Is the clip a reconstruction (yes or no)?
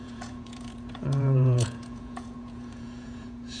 yes